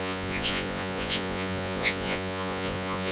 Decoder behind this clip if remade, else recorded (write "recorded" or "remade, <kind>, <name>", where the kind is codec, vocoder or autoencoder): remade, vocoder, Vocos